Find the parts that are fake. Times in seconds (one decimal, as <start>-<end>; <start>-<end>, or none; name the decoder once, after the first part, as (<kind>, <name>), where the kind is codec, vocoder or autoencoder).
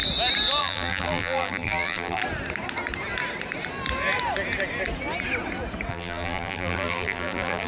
0.6-2.2 (vocoder, BigVGAN v2); 5.9-7.7